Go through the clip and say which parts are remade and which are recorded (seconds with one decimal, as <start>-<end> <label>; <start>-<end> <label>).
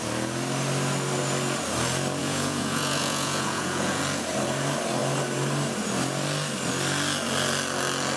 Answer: 0.0-2.2 recorded; 2.2-4.0 remade; 4.0-8.2 recorded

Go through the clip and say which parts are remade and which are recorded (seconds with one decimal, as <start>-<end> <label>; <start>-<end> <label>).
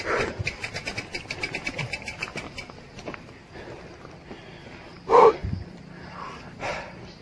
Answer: 0.0-7.2 recorded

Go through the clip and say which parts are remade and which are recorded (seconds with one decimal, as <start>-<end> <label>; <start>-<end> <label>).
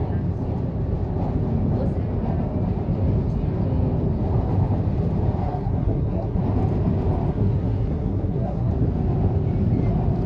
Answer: 0.0-5.4 recorded; 5.4-6.4 remade; 6.4-7.3 recorded; 7.3-8.7 remade; 8.7-10.3 recorded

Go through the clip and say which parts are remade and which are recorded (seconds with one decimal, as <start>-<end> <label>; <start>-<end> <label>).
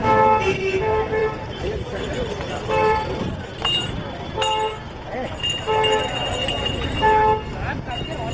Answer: 0.0-1.2 recorded; 1.2-2.5 remade; 2.5-6.5 recorded; 6.5-7.2 remade; 7.2-8.3 recorded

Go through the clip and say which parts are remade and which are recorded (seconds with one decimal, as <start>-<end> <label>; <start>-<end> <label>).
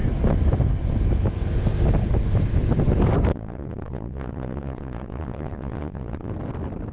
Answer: 0.0-3.3 recorded; 3.3-6.3 remade; 6.3-6.9 recorded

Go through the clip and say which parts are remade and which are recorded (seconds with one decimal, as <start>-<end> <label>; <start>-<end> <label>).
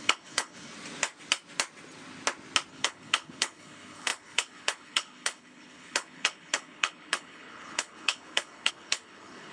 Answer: 0.0-0.7 remade; 0.7-2.7 recorded; 2.7-9.5 remade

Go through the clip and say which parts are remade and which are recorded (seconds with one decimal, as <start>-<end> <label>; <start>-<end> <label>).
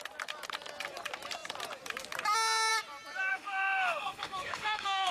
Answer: 0.0-3.3 recorded; 3.3-5.1 remade